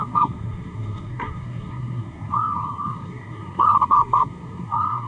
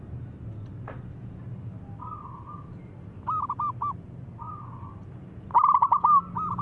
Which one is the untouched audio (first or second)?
second